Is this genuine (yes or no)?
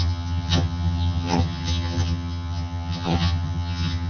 no